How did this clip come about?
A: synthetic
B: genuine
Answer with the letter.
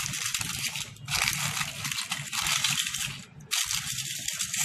B